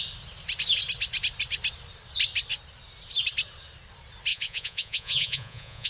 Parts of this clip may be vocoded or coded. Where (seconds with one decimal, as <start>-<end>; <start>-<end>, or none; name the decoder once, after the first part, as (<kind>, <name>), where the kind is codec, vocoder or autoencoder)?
4.3-5.9 (vocoder, Vocos)

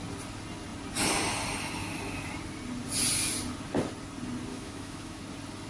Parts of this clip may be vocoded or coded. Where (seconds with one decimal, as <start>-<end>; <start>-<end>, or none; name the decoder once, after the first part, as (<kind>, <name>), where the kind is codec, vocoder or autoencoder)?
4.5-5.2 (autoencoder, DAC-VAE)

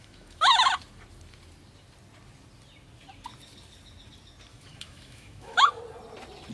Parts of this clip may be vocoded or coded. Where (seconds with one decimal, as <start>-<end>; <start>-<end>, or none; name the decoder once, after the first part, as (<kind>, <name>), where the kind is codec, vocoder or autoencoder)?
0.0-0.7 (autoencoder, DAC-VAE); 4.5-5.7

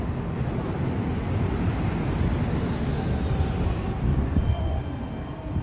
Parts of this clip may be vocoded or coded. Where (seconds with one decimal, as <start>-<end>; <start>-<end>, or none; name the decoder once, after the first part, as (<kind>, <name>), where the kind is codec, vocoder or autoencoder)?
4.1-4.8 (vocoder, Vocos)

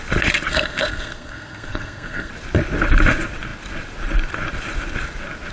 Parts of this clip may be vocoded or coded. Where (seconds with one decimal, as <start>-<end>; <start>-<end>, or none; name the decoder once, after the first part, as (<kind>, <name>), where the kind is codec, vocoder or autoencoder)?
0.5-2.3 (codec, SNAC)